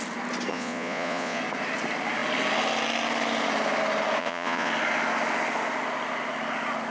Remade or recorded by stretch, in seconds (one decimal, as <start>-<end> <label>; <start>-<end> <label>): 0.0-0.5 recorded; 0.5-1.4 remade; 1.4-4.2 recorded; 4.2-4.7 remade; 4.7-6.9 recorded